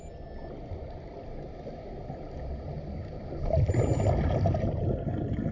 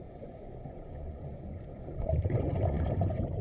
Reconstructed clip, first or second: second